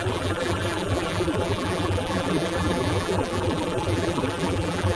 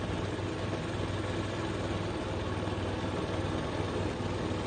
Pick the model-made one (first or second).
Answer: first